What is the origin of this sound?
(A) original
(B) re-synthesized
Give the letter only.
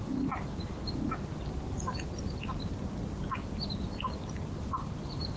A